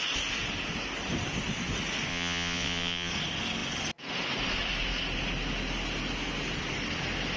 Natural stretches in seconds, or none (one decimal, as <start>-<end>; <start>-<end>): 0.0-2.1; 3.1-7.4